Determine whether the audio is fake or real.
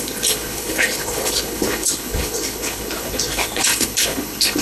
fake